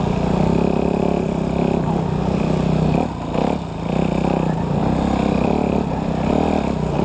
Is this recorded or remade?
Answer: recorded